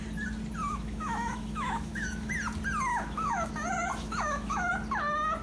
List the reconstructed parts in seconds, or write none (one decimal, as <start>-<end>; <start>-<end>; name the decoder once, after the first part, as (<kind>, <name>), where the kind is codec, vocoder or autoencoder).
0.7-2.3 (autoencoder, DAC-VAE); 2.9-3.5; 3.9-4.7